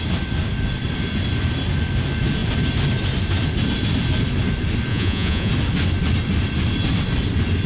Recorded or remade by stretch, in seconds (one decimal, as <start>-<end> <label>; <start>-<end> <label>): 0.0-4.9 recorded; 4.9-5.5 remade; 5.5-7.7 recorded